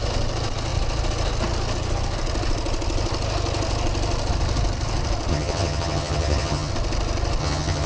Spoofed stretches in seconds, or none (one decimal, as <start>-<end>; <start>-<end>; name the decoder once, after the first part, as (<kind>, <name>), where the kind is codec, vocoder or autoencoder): 5.3-6.7 (vocoder, HiFi-GAN); 7.4-7.9

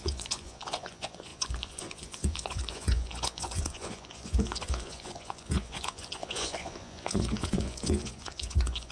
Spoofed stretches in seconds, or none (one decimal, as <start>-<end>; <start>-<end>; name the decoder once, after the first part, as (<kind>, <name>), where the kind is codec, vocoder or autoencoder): 0.0-8.9 (vocoder, Vocos)

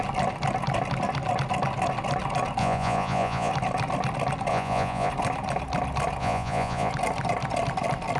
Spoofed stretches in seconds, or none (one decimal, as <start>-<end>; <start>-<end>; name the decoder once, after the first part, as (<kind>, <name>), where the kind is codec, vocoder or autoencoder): 2.6-3.5 (vocoder, Vocos); 4.5-5.1; 6.2-6.9

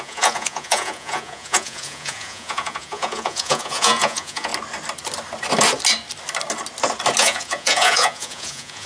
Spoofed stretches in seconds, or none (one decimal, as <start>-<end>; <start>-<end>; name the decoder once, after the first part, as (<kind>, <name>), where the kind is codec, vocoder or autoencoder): 0.0-4.5 (vocoder, Vocos); 7.2-8.9

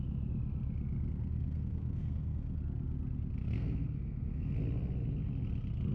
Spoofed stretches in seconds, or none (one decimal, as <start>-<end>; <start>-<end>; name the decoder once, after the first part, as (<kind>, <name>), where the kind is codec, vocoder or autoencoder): 1.3-2.6 (codec, SNAC); 3.4-4.5

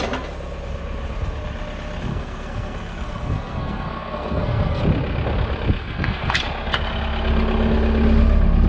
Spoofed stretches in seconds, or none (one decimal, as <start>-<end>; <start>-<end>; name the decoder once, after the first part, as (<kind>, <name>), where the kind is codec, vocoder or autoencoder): 2.1-4.8 (codec, SNAC); 5.8-6.4